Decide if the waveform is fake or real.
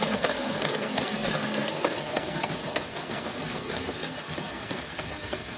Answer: fake